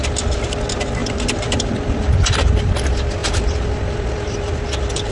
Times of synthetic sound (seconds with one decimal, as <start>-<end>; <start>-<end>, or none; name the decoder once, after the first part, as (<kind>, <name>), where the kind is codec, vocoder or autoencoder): 1.0-2.7 (vocoder, BigVGAN v2); 3.2-5.1